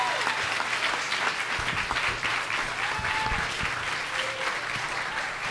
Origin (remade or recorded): recorded